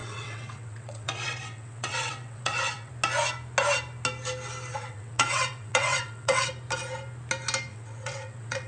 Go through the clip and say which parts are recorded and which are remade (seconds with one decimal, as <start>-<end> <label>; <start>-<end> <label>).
0.0-2.9 remade; 2.9-4.7 recorded; 4.7-6.5 remade; 6.5-7.7 recorded; 7.7-8.7 remade

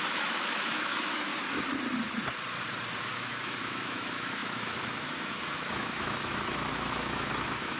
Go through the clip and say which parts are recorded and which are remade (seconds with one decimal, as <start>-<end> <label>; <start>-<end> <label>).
0.0-1.3 remade; 1.3-3.0 recorded; 3.0-7.8 remade

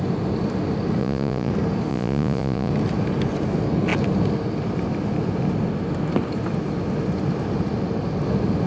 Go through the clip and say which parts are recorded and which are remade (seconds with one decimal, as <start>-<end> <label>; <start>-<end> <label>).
0.0-1.0 recorded; 1.0-1.5 remade; 1.5-1.9 recorded; 1.9-2.7 remade; 2.7-8.7 recorded

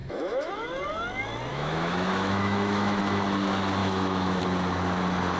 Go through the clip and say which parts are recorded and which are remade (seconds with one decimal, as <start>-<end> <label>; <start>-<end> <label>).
0.0-0.5 remade; 0.5-1.5 recorded; 1.5-3.0 remade; 3.0-3.8 recorded; 3.8-4.4 remade; 4.4-5.4 recorded

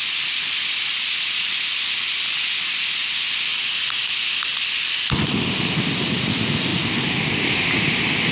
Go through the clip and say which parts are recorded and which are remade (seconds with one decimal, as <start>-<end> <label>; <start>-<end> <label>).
0.0-8.3 recorded

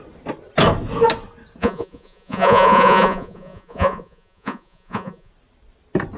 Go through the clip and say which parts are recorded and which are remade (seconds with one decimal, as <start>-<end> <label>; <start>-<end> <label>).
0.0-1.6 recorded; 1.6-5.3 remade; 5.3-6.2 recorded

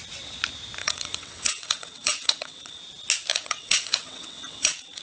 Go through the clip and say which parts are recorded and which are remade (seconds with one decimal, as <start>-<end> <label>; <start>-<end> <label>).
0.0-0.8 recorded; 0.8-2.8 remade; 2.8-3.3 recorded; 3.3-5.0 remade

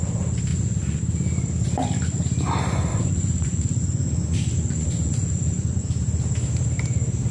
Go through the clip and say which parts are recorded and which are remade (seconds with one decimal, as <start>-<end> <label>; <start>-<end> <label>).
0.0-0.5 recorded; 0.5-1.0 remade; 1.0-2.9 recorded; 2.9-5.8 remade; 5.8-7.3 recorded